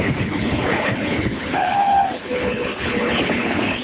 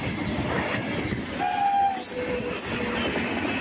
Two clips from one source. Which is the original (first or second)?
second